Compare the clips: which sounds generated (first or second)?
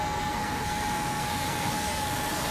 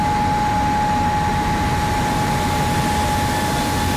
first